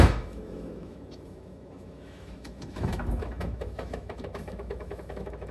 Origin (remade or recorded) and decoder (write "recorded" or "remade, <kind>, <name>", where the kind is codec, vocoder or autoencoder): remade, autoencoder, DAC-VAE